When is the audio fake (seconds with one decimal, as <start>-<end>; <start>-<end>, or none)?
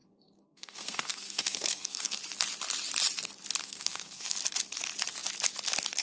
0.0-2.2; 3.6-4.4